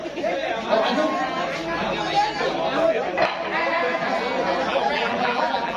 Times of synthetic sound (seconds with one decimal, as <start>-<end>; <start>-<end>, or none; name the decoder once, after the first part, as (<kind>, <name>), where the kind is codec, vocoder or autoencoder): 4.7-5.8 (vocoder, BigVGAN v2)